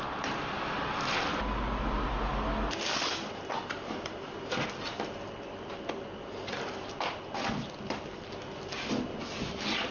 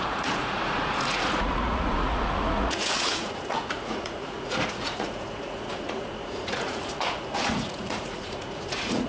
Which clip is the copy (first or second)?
second